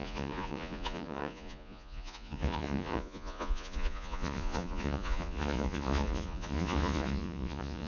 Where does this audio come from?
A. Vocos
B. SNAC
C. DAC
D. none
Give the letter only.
A